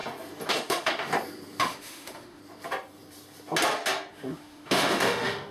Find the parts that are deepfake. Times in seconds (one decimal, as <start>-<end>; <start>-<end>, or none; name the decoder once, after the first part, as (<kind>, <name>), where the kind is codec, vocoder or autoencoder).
0.5-1.1 (autoencoder, DAC-VAE); 1.6-2.4; 4.1-5.5